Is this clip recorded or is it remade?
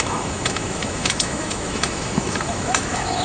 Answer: remade